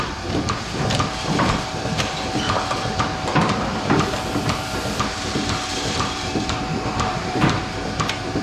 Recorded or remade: remade